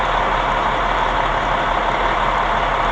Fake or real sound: real